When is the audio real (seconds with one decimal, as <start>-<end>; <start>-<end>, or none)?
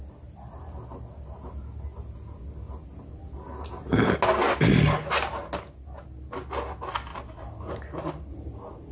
0.0-8.9